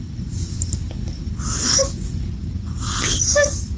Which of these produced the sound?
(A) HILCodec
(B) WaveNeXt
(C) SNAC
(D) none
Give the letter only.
D